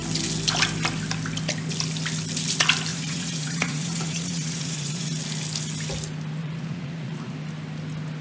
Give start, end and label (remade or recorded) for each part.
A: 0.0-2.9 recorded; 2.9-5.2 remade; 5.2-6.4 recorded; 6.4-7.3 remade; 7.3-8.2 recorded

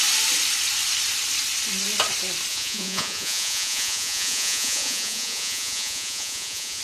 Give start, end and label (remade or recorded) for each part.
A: 0.0-2.5 recorded; 2.5-6.8 remade

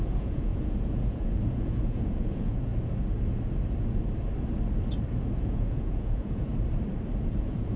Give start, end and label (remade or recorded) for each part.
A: 0.0-2.7 remade; 2.7-5.4 recorded; 5.4-6.5 remade; 6.5-7.2 recorded; 7.2-7.8 remade

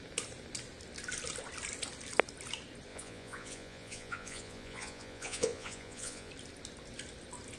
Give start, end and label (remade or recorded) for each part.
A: 0.0-2.9 recorded; 2.9-6.3 remade; 6.3-7.6 recorded

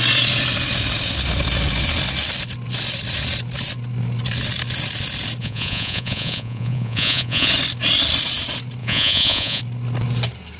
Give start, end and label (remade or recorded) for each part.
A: 0.0-5.4 recorded; 5.4-7.5 remade; 7.5-8.8 recorded; 8.8-9.6 remade; 9.6-10.6 recorded